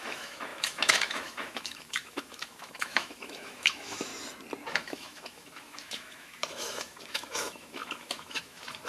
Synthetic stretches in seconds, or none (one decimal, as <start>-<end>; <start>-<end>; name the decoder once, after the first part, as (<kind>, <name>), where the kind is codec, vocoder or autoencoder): 0.0-4.1 (autoencoder, DAC-VAE); 4.7-8.9